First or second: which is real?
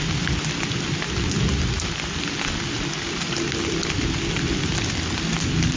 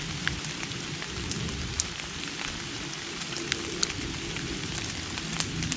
first